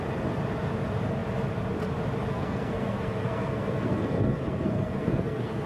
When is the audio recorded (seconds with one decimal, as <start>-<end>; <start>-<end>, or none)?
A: 0.0-2.3